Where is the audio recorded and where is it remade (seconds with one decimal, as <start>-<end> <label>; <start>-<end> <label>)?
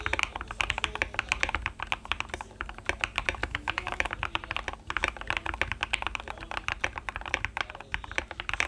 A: 0.0-3.4 recorded; 3.4-4.1 remade; 4.1-8.7 recorded